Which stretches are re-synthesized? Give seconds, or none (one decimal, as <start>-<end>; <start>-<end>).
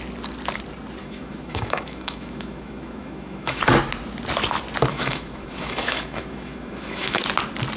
1.0-3.6; 4.9-7.2